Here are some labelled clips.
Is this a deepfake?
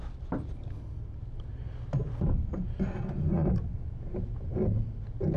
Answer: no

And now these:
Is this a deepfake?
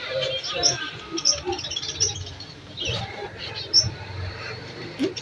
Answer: yes